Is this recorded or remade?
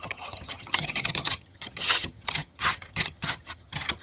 remade